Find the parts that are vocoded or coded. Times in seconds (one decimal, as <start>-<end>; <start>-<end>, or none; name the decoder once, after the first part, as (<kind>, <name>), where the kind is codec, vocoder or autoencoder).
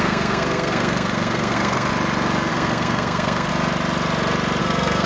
0.0-1.9 (codec, SNAC); 2.5-3.5; 4.6-5.1